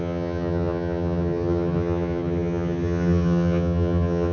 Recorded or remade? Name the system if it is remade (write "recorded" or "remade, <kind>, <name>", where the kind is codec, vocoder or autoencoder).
remade, vocoder, HiFi-GAN